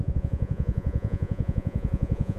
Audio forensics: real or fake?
fake